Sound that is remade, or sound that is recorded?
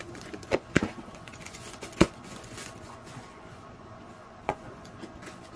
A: remade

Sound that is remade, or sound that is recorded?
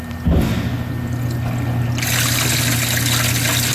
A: recorded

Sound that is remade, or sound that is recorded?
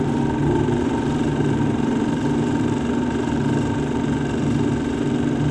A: remade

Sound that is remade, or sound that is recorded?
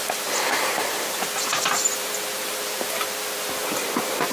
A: remade